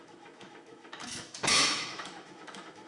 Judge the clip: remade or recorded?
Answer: remade